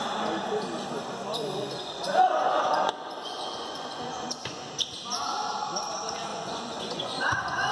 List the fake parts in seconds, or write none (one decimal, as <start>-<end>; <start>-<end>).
1.3-4.7; 6.3-7.7